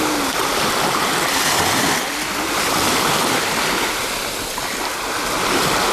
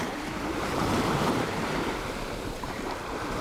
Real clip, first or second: first